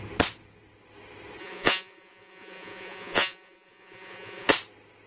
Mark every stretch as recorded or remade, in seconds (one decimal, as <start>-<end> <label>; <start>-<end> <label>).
0.0-1.4 recorded; 1.4-4.5 remade; 4.5-5.1 recorded